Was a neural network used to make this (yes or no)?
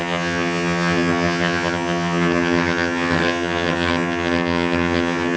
yes